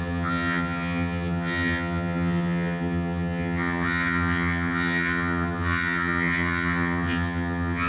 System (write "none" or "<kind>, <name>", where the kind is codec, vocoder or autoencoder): vocoder, HiFi-GAN